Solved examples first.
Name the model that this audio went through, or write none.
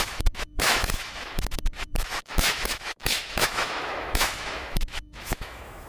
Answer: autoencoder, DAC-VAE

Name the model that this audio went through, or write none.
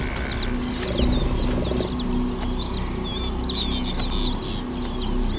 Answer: none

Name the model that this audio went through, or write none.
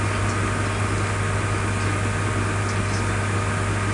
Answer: none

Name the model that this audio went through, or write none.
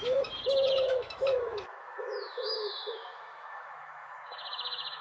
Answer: autoencoder, DAC-VAE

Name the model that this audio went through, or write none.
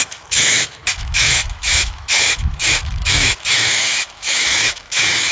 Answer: autoencoder, DAC-VAE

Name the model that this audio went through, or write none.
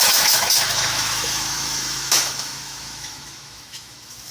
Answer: autoencoder, DAC-VAE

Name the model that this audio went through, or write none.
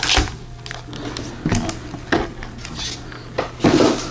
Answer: none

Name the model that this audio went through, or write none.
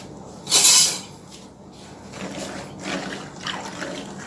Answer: none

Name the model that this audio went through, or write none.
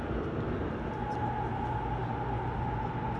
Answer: none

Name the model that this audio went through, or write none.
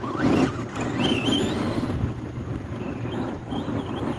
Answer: none